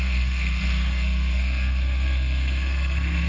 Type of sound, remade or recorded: remade